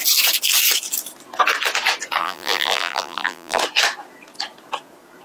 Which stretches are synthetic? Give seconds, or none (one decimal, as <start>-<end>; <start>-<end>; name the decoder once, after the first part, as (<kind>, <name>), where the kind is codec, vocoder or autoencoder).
2.2-3.6 (vocoder, BigVGAN v2)